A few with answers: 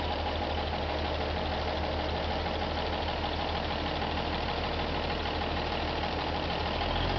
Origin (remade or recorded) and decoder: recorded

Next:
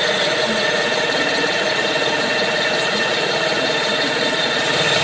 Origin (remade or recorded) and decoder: remade, vocoder, Vocos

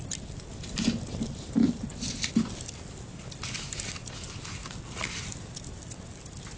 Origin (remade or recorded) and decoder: recorded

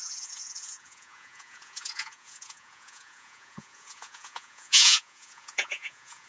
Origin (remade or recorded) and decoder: remade, vocoder, Vocos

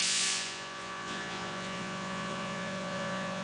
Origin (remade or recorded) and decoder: remade, vocoder, Vocos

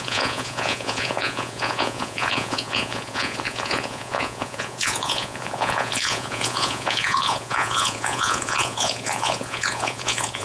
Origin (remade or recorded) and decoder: remade, vocoder, Vocos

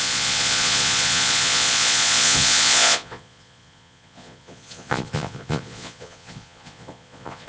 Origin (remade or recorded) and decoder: remade, vocoder, Vocos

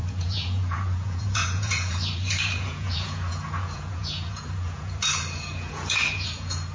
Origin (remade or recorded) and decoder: remade, vocoder, Vocos